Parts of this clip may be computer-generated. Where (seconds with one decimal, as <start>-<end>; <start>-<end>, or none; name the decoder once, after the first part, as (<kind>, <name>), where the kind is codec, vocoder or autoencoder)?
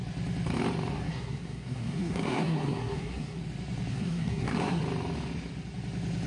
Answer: 0.9-3.4 (codec, SNAC); 3.9-4.8